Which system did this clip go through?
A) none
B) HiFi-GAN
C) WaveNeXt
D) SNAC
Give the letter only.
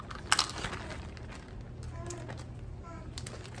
A